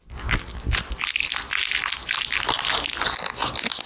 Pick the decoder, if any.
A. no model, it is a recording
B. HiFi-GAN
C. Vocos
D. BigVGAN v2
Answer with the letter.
A